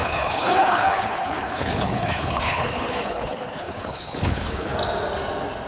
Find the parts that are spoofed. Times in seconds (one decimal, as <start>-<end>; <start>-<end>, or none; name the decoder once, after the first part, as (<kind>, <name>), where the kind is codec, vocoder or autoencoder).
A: 0.0-4.7 (codec, HILCodec)